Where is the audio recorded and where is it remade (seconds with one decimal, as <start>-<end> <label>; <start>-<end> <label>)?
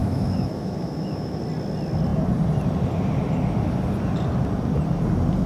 0.0-1.4 remade; 1.4-5.5 recorded